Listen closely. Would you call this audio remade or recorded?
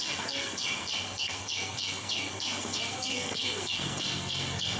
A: remade